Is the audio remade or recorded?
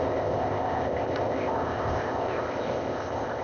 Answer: remade